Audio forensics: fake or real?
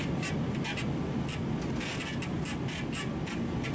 real